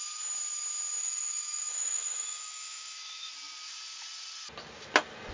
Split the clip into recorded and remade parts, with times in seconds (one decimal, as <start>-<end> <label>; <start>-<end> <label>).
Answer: 0.0-1.0 recorded; 1.0-3.3 remade; 3.3-5.3 recorded